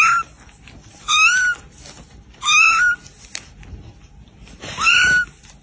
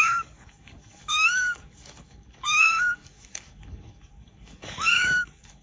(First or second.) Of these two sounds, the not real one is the second